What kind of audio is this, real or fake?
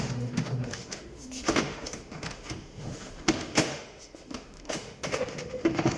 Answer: fake